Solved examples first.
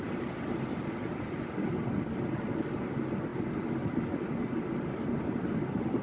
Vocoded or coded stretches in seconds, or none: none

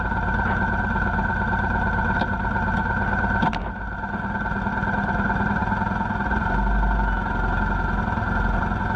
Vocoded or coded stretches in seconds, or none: none

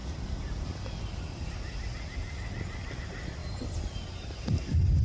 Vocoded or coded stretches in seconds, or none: none

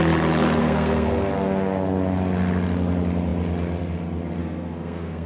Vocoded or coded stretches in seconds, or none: 0.6-1.3 (codec, SNAC); 4.4-5.3

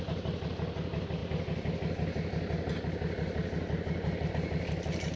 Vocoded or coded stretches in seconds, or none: none

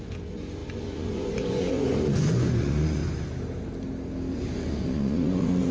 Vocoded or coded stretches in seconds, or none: 0.0-3.0 (vocoder, Vocos); 4.3-5.7